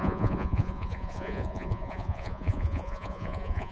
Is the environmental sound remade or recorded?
remade